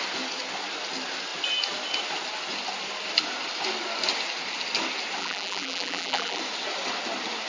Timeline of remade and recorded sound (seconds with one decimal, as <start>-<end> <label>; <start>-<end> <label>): 0.0-5.2 recorded; 5.2-6.4 remade; 6.4-7.5 recorded